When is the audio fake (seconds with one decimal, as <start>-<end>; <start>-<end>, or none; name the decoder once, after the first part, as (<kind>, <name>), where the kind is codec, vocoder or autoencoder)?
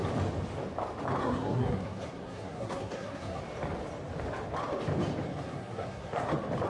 1.2-3.4 (codec, SNAC); 5.3-6.3